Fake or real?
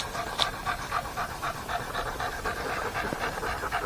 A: real